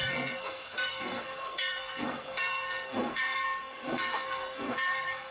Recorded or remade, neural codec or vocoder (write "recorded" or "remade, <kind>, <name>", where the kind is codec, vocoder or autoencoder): remade, codec, SNAC